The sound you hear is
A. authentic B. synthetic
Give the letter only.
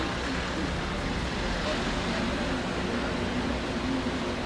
A